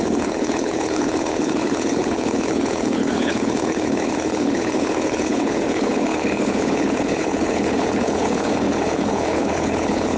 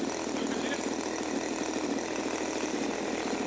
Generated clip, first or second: first